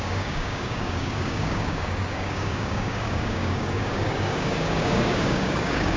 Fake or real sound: fake